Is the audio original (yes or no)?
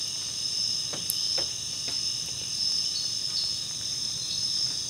yes